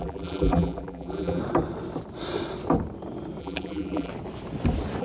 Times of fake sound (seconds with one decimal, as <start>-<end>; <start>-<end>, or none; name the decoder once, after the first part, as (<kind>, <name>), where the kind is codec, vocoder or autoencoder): 0.0-1.4 (vocoder, BigVGAN v2); 3.4-4.1